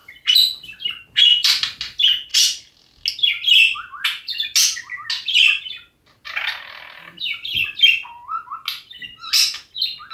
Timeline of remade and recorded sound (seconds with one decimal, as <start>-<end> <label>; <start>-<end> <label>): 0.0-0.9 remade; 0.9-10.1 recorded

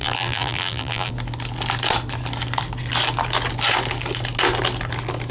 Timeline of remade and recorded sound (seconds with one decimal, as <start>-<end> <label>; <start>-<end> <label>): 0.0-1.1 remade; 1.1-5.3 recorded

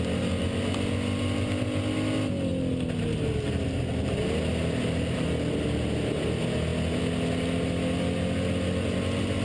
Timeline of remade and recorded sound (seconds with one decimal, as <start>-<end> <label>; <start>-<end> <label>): 0.0-9.4 recorded

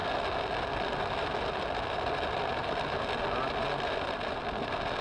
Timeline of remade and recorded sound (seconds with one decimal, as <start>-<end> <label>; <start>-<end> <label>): 0.0-5.0 recorded

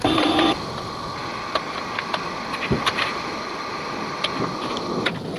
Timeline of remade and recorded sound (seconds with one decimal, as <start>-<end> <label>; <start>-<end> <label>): 0.0-5.4 remade

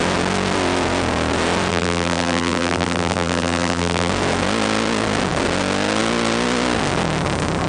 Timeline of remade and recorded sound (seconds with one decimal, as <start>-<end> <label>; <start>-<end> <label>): 0.0-1.7 recorded; 1.7-4.1 remade; 4.1-7.7 recorded

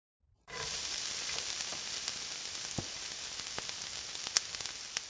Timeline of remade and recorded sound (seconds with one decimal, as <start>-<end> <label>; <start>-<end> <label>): 0.0-1.1 remade; 1.1-5.1 recorded